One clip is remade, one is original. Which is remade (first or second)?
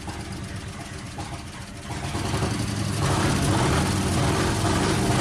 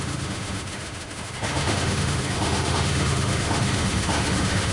second